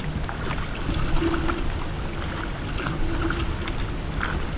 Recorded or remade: recorded